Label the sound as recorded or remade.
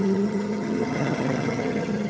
remade